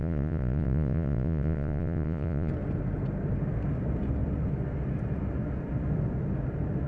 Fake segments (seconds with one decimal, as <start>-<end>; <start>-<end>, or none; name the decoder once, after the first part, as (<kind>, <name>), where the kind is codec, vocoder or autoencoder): 0.0-2.5 (vocoder, Vocos)